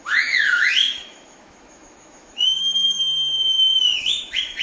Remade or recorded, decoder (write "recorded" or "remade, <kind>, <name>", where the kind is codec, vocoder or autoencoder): remade, autoencoder, DAC-VAE